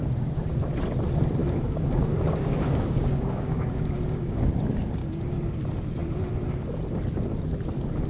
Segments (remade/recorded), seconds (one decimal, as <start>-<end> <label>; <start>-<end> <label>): 0.0-1.4 recorded; 1.4-4.5 remade; 4.5-5.0 recorded; 5.0-5.6 remade; 5.6-8.1 recorded